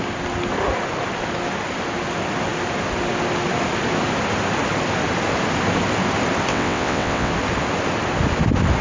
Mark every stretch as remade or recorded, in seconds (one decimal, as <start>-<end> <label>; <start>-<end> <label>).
0.0-6.5 recorded; 6.5-7.3 remade; 7.3-8.8 recorded